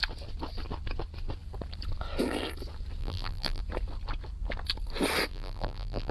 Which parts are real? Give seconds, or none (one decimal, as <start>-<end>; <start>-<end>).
0.0-3.0; 3.6-5.3